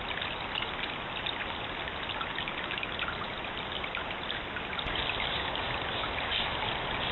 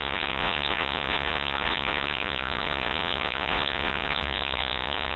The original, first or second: first